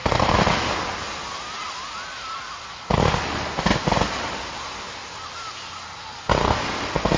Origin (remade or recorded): recorded